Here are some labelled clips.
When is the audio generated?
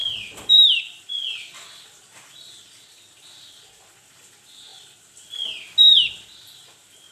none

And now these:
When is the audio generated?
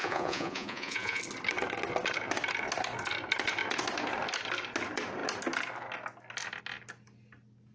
0.0-1.2 (vocoder, Vocos)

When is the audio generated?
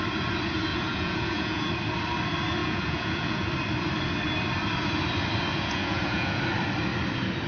0.7-1.7 (vocoder, Vocos); 2.6-3.5; 5.5-6.4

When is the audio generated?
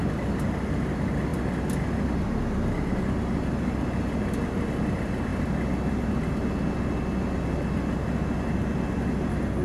none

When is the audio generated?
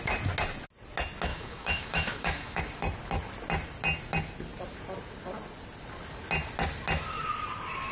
1.3-2.6 (autoencoder, DAC-VAE)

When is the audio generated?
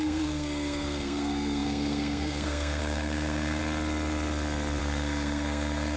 0.0-3.6 (codec, SNAC); 4.8-6.0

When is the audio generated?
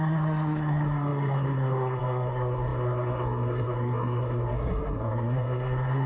0.0-6.1 (codec, SNAC)